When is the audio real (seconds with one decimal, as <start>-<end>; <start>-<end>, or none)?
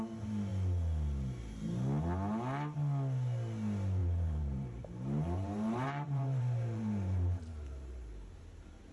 0.0-4.0; 8.4-8.9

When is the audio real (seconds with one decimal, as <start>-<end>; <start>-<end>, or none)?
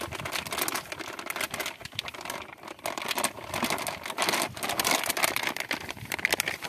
0.0-6.7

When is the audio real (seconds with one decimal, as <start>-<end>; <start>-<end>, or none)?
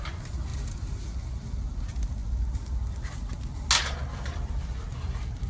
0.0-5.5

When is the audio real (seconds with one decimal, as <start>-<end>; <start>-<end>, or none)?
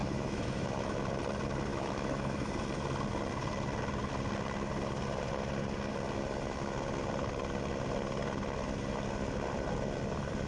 1.1-1.7; 2.5-10.5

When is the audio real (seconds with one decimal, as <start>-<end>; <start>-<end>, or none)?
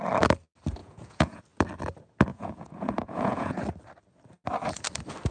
0.0-0.8; 1.4-2.3; 3.6-5.3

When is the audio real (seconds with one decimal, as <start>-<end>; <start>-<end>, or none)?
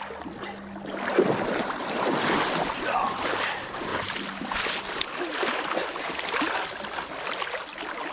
0.0-8.1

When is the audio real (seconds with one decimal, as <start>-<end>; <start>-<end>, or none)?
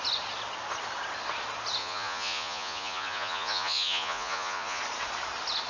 0.0-1.8; 4.8-5.7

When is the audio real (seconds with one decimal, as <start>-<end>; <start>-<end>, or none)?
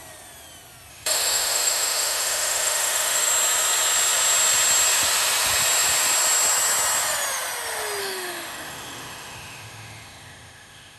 0.0-0.9; 3.3-8.0